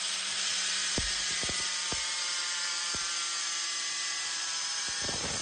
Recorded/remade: remade